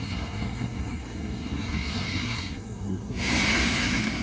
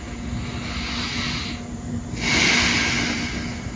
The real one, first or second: second